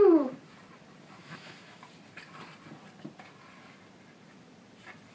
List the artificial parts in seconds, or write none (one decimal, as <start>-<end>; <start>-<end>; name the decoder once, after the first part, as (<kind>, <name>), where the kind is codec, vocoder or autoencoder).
1.2-1.8 (autoencoder, DAC-VAE)